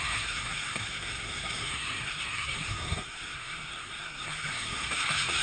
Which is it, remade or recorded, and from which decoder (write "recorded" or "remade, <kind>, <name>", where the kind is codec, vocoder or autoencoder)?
remade, codec, SNAC